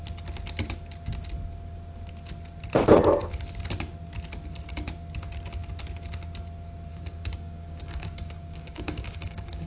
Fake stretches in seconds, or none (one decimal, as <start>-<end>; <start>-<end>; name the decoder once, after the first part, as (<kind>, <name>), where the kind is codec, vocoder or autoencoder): 6.9-9.7 (codec, DAC)